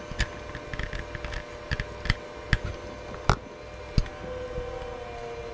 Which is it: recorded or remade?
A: recorded